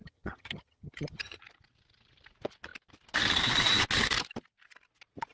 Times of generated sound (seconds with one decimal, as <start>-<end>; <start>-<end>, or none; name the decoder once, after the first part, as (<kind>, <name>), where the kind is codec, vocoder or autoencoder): 0.0-1.4 (vocoder, HiFi-GAN)